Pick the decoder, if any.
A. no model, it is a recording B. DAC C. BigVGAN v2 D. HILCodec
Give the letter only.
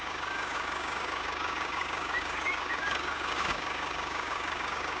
B